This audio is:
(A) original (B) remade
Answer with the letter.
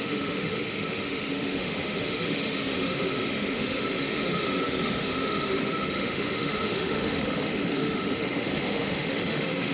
B